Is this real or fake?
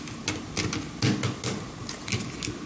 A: real